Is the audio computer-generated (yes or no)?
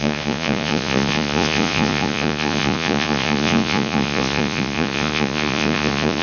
yes